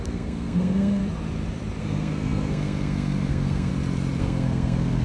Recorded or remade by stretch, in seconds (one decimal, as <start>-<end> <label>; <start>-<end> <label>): 0.0-1.0 remade; 1.0-1.8 recorded; 1.8-3.7 remade; 3.7-4.2 recorded; 4.2-5.0 remade